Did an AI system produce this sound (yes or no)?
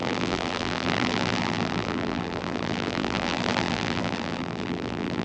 yes